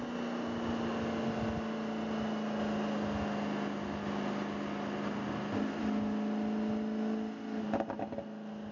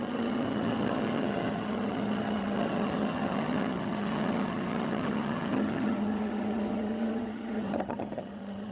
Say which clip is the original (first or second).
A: first